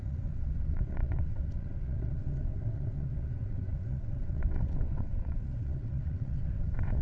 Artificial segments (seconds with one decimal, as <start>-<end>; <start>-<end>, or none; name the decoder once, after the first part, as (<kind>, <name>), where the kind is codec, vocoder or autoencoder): 0.0-7.0 (vocoder, WaveNeXt)